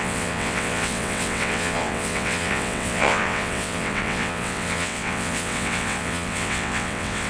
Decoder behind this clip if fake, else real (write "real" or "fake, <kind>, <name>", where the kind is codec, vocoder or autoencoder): fake, vocoder, WaveNeXt